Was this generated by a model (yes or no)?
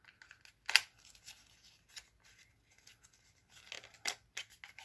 no